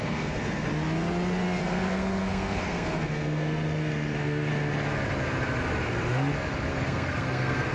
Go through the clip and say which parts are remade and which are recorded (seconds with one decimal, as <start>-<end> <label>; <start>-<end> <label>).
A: 0.0-0.7 remade; 0.7-1.6 recorded; 1.6-4.5 remade; 4.5-6.8 recorded; 6.8-7.7 remade